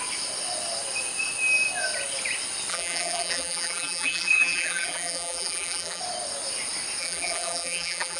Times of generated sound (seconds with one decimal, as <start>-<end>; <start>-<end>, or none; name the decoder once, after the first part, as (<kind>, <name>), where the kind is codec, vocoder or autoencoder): 2.7-6.0 (vocoder, BigVGAN v2); 7.0-8.2